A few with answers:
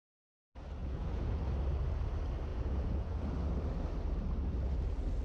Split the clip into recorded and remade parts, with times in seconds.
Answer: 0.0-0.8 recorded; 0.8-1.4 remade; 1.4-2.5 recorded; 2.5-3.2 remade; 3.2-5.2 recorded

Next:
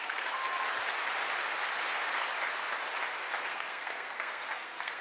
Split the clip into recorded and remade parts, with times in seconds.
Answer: 0.0-0.4 remade; 0.4-3.4 recorded; 3.4-5.0 remade

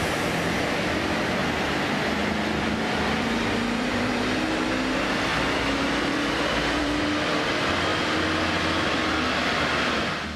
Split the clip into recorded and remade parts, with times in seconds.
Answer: 0.0-1.4 remade; 1.4-2.6 recorded; 2.6-7.9 remade; 7.9-9.0 recorded; 9.0-10.4 remade

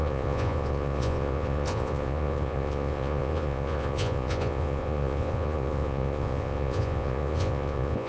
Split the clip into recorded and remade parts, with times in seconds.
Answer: 0.0-8.1 remade